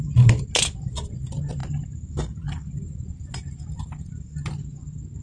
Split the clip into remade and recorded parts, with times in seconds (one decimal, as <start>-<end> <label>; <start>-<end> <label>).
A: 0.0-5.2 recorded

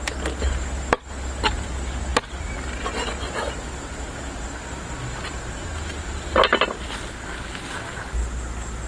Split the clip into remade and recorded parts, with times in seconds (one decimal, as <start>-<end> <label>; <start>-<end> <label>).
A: 0.0-8.9 recorded

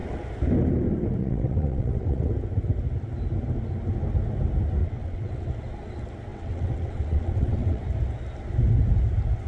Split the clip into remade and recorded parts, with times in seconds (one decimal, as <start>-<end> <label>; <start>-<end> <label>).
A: 0.0-1.2 recorded; 1.2-2.3 remade; 2.3-4.8 recorded; 4.8-5.5 remade; 5.5-6.3 recorded; 6.3-7.8 remade; 7.8-9.5 recorded

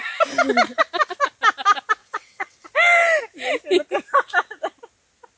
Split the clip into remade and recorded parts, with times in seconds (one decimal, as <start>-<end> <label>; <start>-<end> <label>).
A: 0.0-2.0 recorded; 2.0-2.7 remade; 2.7-5.4 recorded